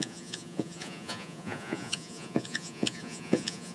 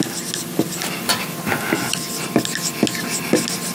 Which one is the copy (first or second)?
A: first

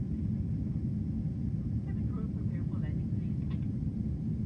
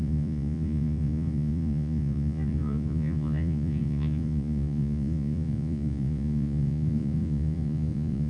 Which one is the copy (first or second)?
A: second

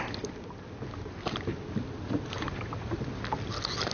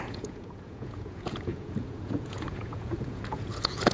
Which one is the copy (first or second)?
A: second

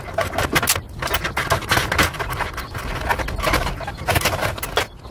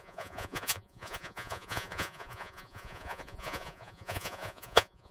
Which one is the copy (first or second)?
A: second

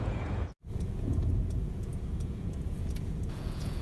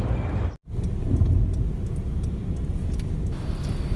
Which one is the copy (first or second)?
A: first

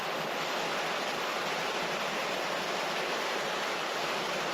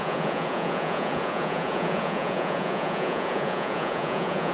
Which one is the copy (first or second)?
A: second